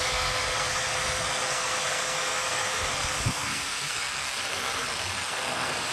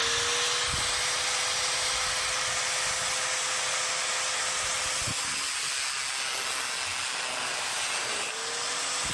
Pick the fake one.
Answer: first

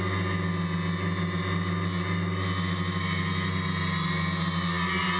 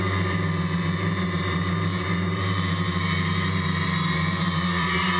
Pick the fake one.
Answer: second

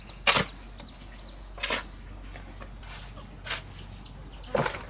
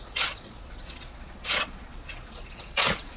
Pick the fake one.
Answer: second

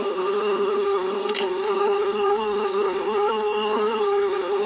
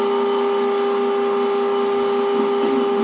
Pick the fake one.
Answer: first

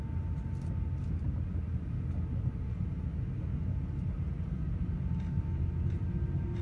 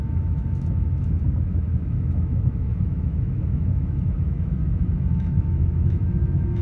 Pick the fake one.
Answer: second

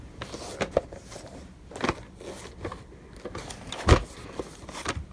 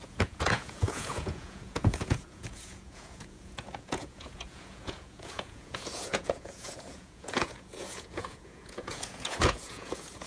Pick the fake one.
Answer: second